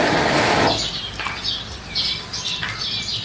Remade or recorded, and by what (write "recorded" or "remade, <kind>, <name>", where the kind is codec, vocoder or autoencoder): recorded